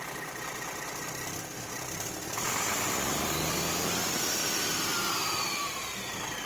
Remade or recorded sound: recorded